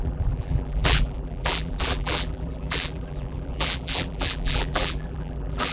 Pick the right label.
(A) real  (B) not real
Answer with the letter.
B